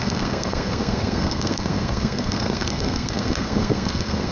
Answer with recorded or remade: remade